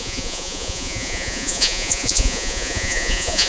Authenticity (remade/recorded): remade